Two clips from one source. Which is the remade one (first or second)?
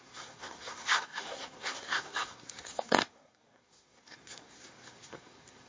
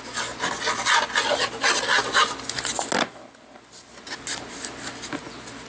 first